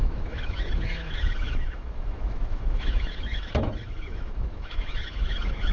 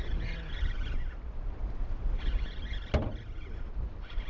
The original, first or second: second